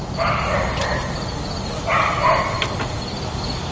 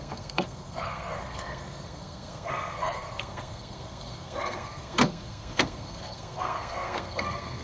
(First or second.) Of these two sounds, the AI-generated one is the second